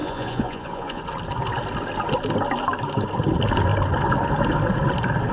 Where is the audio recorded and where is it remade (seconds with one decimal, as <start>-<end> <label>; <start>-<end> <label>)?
0.0-1.0 remade; 1.0-5.3 recorded